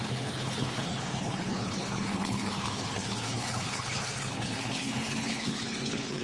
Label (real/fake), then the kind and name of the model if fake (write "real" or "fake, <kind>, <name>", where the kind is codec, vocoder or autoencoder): fake, codec, HILCodec